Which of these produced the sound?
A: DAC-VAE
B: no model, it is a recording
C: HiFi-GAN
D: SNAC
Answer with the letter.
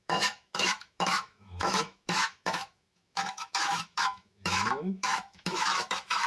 A